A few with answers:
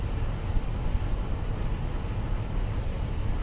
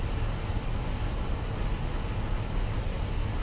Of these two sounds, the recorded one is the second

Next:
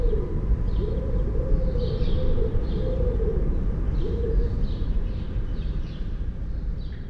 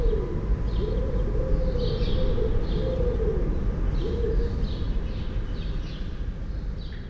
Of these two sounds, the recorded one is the second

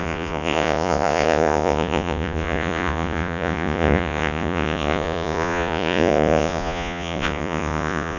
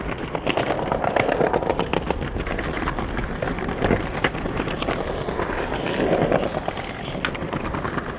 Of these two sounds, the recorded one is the second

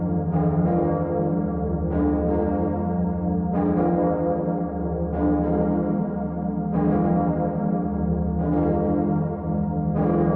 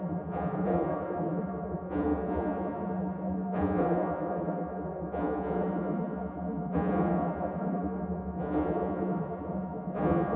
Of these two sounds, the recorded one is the first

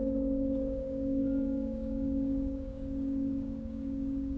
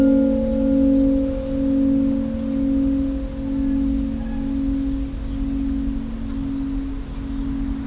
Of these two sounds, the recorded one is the second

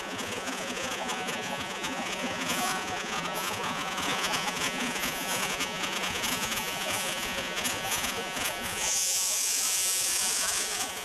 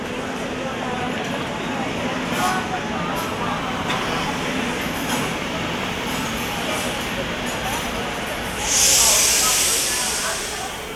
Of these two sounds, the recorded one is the second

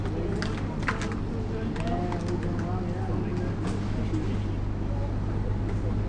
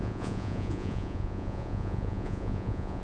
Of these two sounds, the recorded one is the first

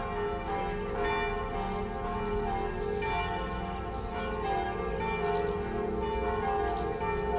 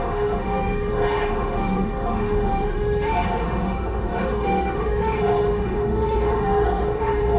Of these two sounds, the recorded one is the first